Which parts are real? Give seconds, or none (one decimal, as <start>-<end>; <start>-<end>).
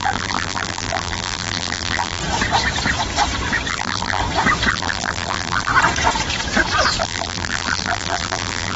2.2-3.7; 4.2-4.7; 5.7-7.0